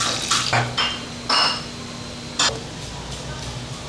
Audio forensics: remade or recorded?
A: recorded